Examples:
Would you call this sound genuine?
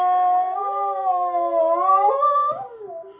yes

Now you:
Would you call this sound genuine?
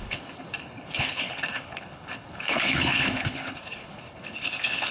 no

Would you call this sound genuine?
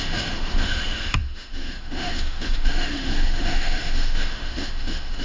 no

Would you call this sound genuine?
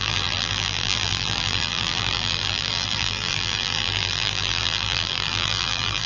no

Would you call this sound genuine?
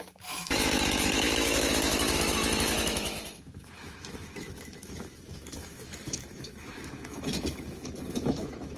no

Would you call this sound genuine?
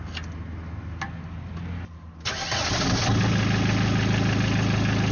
yes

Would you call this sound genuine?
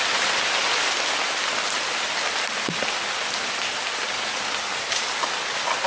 yes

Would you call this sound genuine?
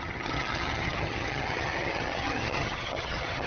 no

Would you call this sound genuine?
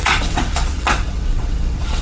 no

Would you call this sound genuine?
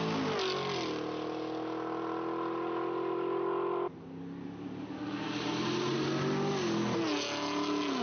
yes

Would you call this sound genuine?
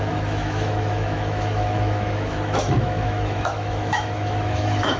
no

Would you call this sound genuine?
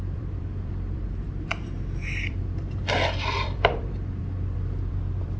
no